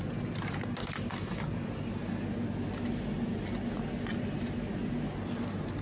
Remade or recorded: recorded